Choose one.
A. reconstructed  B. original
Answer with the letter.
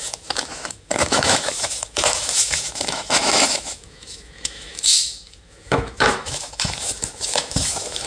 A